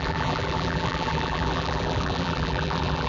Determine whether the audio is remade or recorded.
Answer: remade